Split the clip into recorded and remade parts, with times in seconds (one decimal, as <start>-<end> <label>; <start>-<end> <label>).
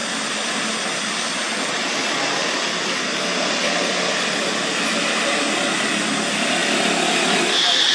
0.0-7.9 recorded